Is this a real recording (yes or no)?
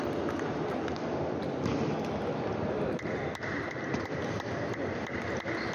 yes